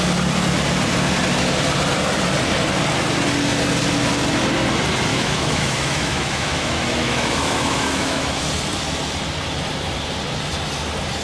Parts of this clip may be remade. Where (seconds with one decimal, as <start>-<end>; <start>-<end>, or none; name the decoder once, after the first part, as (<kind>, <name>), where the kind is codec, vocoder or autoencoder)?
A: 5.1-8.4 (autoencoder, DAC-VAE)